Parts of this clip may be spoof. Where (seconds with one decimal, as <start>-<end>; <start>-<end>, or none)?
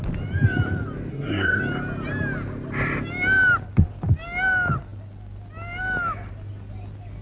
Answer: 1.1-1.6